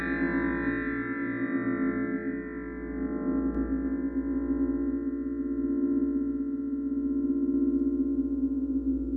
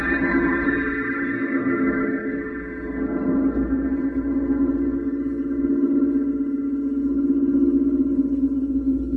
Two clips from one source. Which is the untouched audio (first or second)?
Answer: first